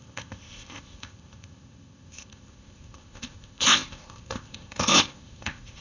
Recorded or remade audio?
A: remade